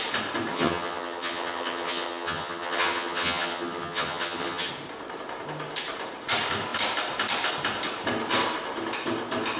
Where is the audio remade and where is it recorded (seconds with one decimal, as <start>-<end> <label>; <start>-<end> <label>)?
0.0-0.5 recorded; 0.5-4.7 remade; 4.7-9.6 recorded